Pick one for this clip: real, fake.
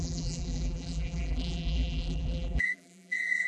fake